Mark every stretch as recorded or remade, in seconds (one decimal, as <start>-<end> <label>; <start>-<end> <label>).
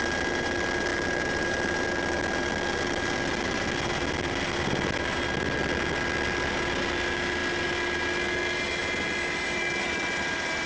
0.0-10.7 recorded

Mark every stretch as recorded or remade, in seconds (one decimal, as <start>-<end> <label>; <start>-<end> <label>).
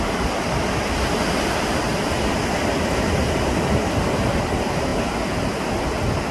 0.0-6.3 recorded